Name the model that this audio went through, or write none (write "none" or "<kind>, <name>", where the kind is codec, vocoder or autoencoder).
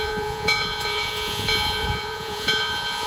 vocoder, Vocos